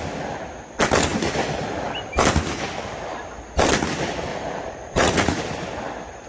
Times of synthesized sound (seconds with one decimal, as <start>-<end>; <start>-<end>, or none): 4.3-5.4